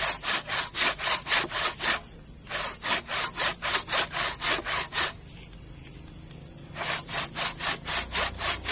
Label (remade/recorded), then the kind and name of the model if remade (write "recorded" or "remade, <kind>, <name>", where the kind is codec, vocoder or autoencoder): recorded